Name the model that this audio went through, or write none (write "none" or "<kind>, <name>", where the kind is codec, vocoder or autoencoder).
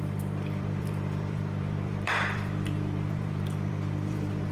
vocoder, BigVGAN v2